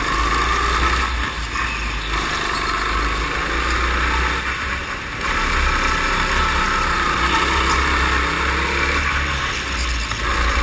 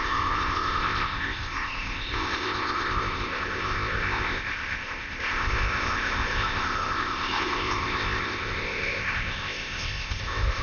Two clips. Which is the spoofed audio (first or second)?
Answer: second